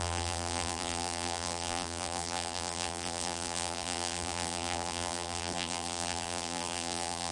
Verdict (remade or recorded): remade